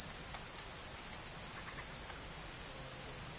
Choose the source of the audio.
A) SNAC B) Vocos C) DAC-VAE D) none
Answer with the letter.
D